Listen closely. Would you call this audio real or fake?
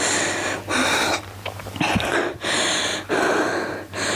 real